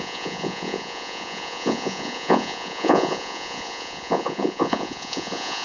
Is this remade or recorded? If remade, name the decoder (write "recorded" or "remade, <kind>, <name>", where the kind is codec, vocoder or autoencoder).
remade, vocoder, Vocos